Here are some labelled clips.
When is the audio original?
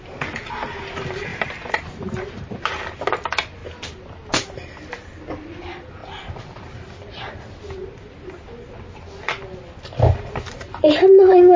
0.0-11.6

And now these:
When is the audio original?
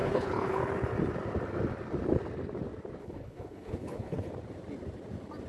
0.6-3.0; 4.3-5.5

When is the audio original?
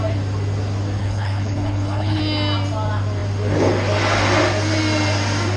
0.0-1.0; 2.2-5.6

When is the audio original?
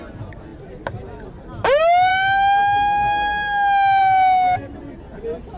0.0-5.6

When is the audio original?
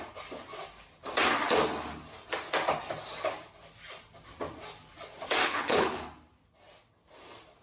0.0-5.4; 6.0-7.6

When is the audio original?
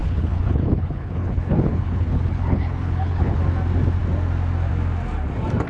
3.4-5.7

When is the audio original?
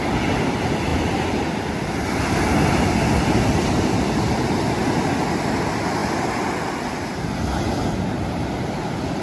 0.0-9.2